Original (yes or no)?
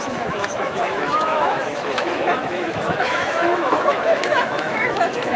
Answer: no